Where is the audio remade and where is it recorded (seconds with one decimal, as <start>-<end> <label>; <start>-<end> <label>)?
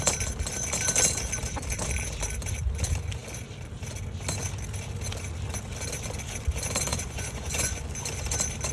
0.0-6.9 recorded; 6.9-7.8 remade; 7.8-8.7 recorded